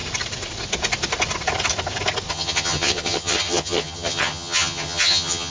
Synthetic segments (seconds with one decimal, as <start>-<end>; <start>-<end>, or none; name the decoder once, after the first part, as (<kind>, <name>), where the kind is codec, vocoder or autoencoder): 2.3-5.5 (vocoder, HiFi-GAN)